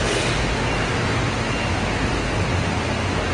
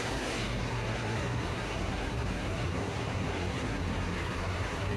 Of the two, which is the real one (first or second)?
first